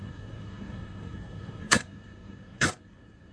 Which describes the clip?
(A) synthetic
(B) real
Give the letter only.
A